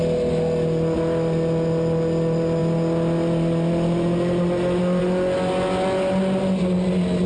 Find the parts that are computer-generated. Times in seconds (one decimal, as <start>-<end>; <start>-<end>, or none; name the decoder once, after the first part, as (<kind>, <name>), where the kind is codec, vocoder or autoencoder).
none